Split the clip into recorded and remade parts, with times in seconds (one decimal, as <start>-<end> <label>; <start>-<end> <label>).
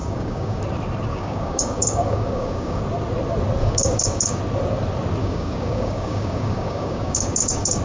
0.0-0.6 remade; 0.6-1.1 recorded; 1.1-2.8 remade; 2.8-3.6 recorded; 3.6-4.4 remade; 4.4-5.2 recorded; 5.2-7.8 remade